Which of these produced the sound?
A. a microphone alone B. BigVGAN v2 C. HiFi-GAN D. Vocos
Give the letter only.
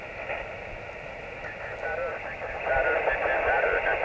A